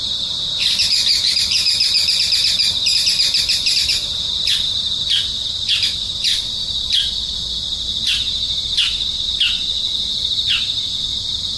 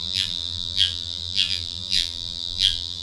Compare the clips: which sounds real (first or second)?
first